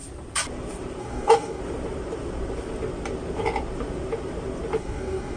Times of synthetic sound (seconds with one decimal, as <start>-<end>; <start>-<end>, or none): 1.0-1.6; 4.8-5.4